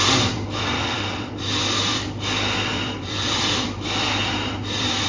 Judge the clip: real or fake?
fake